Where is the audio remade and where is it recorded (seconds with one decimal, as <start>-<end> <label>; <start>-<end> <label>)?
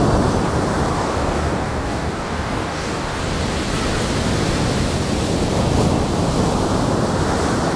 0.0-0.9 recorded; 0.9-3.2 remade; 3.2-7.8 recorded